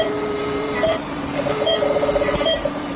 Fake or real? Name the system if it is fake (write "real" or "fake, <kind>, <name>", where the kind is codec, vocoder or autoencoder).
fake, vocoder, BigVGAN v2